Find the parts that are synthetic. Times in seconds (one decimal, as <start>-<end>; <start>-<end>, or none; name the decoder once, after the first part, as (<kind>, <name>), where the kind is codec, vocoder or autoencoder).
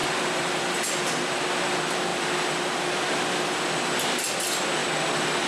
0.0-1.3 (vocoder, BigVGAN v2)